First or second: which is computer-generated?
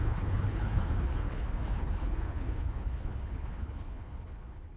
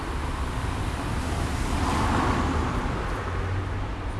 first